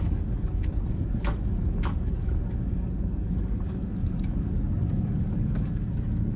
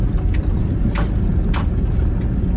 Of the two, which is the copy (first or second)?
first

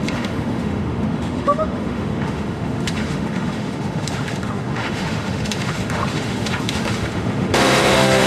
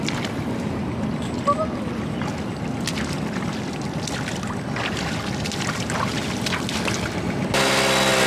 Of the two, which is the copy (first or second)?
first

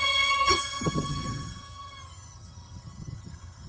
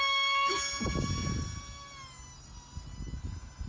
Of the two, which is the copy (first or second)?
first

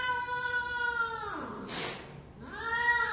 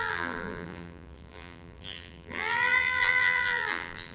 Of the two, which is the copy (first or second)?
second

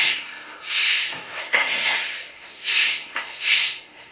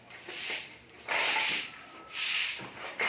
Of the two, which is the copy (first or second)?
first